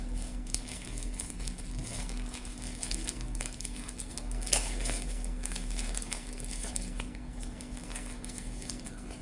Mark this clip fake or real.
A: fake